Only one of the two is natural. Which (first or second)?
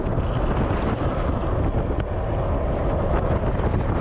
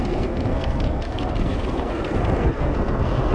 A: first